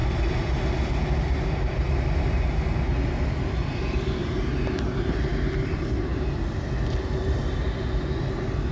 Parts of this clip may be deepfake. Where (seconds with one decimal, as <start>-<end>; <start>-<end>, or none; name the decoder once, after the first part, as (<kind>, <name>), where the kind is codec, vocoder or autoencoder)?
5.3-7.0 (vocoder, BigVGAN v2)